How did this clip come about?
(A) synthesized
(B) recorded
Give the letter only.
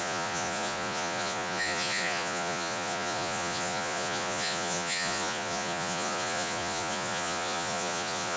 A